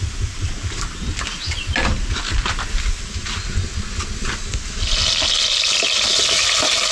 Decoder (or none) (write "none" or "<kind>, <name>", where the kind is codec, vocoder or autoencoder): none